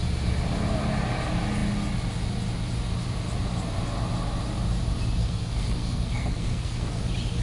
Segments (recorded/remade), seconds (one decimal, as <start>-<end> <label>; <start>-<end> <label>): 0.0-5.2 recorded; 5.2-7.0 remade; 7.0-7.4 recorded

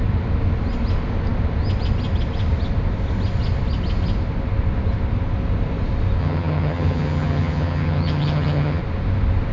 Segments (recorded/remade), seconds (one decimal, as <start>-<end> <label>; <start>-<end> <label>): 0.0-6.2 recorded; 6.2-8.8 remade; 8.8-9.5 recorded

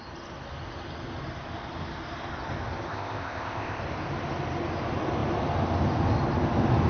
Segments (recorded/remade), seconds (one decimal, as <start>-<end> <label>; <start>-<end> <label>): 0.0-2.9 recorded; 2.9-3.8 remade; 3.8-6.9 recorded

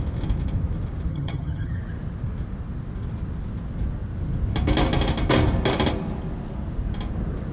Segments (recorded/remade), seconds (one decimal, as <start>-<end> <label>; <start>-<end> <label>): 0.0-1.1 recorded; 1.1-1.8 remade; 1.8-7.5 recorded

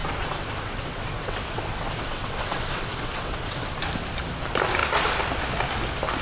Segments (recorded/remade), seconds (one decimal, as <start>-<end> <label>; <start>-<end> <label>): 0.0-3.7 remade; 3.7-6.2 recorded

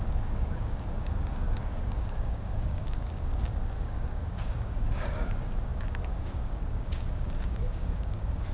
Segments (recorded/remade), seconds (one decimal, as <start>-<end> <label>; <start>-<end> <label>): 0.0-8.5 remade

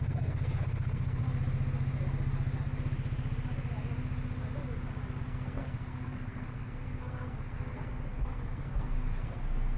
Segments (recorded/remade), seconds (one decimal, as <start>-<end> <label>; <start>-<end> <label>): 0.0-1.2 remade; 1.2-5.2 recorded; 5.2-9.8 remade

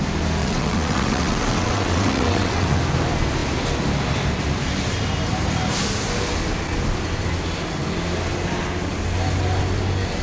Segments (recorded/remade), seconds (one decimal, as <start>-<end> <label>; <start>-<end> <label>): 0.0-0.4 recorded; 0.4-2.8 remade; 2.8-10.2 recorded